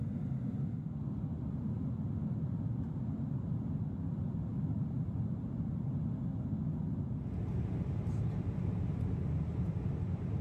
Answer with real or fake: real